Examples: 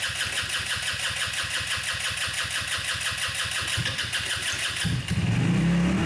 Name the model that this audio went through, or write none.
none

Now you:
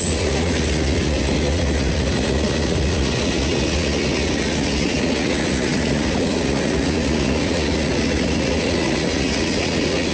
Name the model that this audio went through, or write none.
vocoder, Vocos